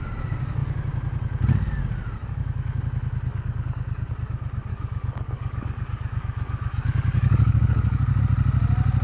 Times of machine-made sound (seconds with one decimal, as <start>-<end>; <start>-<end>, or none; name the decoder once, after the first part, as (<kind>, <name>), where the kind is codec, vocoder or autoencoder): 2.2-2.8 (codec, DAC); 3.3-4.1; 4.7-8.2